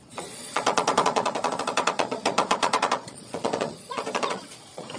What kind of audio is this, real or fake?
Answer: fake